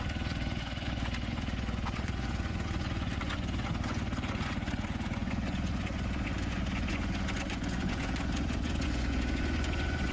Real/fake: fake